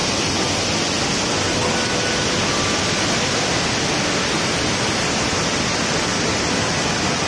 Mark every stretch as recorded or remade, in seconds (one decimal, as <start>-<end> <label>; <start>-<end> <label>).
0.0-7.3 recorded